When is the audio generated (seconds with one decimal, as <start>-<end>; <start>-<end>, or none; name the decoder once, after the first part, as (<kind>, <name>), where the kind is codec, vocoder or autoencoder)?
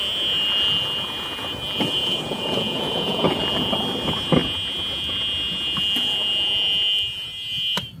2.0-3.4 (vocoder, Vocos)